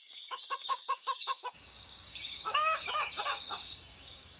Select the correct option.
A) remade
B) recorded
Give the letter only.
A